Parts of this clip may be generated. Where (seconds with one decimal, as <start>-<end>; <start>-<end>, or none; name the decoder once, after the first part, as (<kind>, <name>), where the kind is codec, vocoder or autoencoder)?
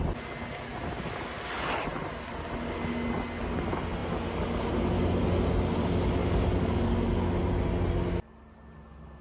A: 6.2-7.4 (codec, DAC)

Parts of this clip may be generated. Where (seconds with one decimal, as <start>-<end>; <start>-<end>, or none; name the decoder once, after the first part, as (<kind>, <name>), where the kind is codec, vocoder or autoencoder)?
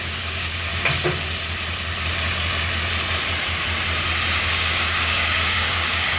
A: 0.0-0.7 (codec, DAC); 4.4-6.2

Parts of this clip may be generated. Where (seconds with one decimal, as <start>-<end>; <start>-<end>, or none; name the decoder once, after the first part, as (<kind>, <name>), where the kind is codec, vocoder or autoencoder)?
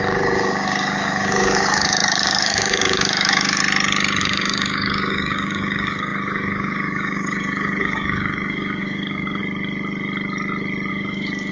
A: 0.0-3.6 (codec, DAC); 4.2-9.4; 10.9-11.5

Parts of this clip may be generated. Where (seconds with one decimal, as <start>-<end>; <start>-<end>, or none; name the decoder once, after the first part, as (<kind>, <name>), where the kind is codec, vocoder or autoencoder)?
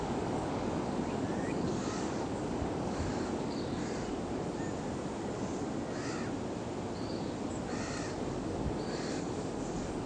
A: 0.0-3.8 (codec, DAC); 8.2-10.1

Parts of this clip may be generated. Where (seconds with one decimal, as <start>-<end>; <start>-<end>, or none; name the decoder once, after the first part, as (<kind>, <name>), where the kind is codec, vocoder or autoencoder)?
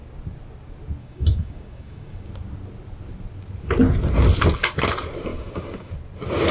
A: 1.0-2.3 (codec, DAC); 5.3-5.9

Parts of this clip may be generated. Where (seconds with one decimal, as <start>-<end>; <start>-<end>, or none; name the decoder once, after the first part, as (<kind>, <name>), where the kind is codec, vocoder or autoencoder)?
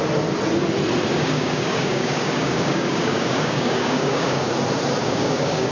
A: 1.1-4.5 (codec, DAC); 5.0-5.7